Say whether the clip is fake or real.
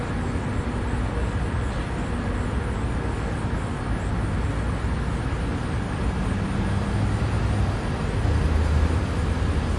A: real